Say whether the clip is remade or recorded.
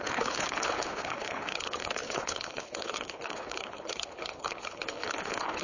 remade